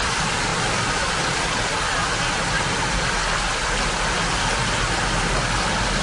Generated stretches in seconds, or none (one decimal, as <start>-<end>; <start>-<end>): none